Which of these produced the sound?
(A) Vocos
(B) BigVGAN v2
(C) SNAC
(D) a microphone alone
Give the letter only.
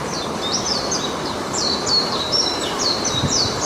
B